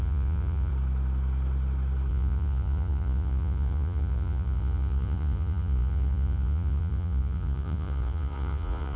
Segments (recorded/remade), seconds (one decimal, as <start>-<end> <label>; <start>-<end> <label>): 0.0-0.7 remade; 0.7-2.1 recorded; 2.1-9.0 remade